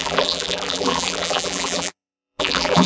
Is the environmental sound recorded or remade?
remade